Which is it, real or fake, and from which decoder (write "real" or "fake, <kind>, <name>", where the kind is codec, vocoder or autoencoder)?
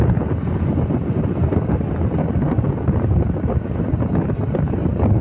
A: real